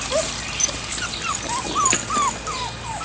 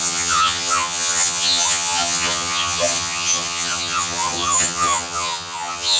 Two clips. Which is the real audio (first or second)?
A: first